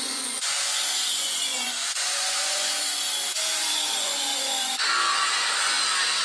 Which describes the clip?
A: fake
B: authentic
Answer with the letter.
A